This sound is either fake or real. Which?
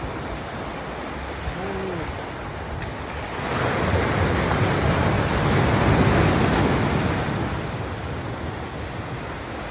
real